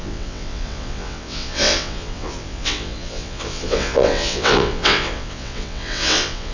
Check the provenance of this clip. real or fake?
fake